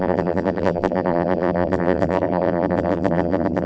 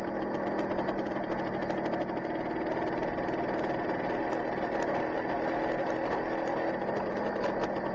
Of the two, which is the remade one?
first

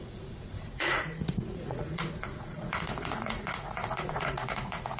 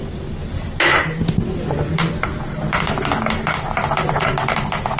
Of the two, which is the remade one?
first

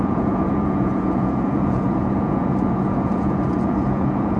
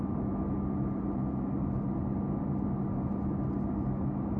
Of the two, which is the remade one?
first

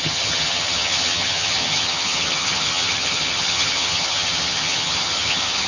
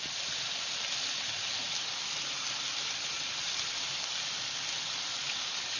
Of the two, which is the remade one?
first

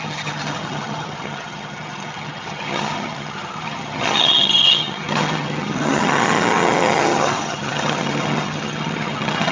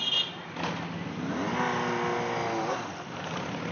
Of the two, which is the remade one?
first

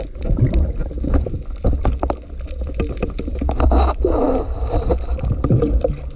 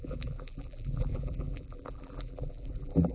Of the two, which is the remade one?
second